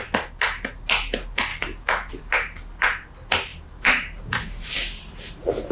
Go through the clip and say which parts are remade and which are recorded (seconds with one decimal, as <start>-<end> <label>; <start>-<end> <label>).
0.0-1.5 recorded; 1.5-2.1 remade; 2.1-5.7 recorded